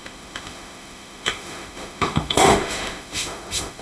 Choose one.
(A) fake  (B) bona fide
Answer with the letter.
A